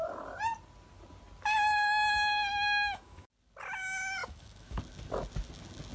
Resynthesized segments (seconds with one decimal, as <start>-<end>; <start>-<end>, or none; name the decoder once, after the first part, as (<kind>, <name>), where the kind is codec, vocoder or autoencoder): 2.5-3.3 (autoencoder, DAC-VAE); 4.2-4.8